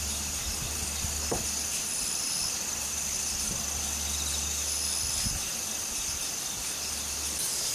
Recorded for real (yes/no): yes